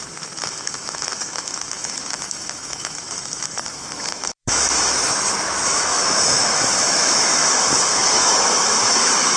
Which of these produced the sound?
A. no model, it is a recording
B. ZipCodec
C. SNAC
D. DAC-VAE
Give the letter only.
D